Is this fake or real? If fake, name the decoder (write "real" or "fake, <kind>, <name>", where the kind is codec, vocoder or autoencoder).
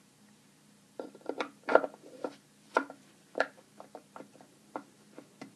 fake, vocoder, BigVGAN v2